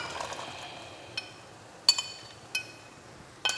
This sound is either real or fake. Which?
real